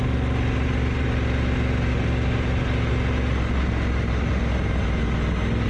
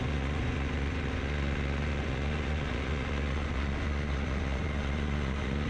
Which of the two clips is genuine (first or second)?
first